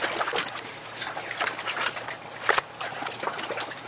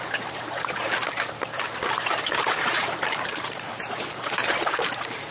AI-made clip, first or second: second